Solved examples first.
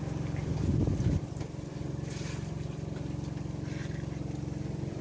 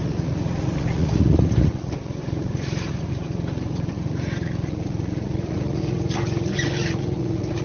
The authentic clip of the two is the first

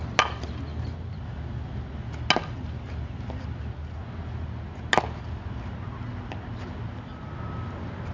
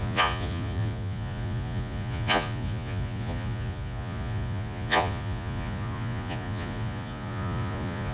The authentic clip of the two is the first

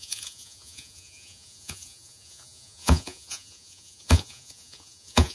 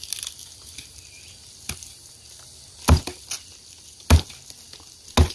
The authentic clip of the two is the second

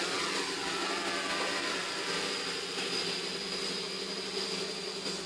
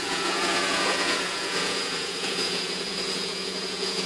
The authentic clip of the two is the first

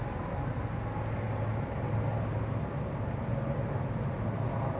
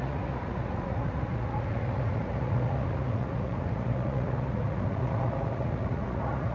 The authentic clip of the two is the first